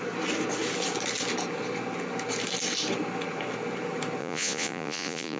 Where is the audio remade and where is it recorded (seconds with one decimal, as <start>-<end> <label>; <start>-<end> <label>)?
0.0-4.2 recorded; 4.2-5.4 remade